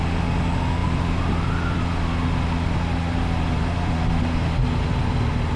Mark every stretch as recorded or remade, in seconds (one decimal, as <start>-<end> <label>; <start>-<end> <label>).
0.0-5.6 recorded